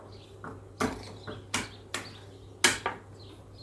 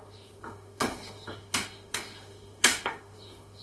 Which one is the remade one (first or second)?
second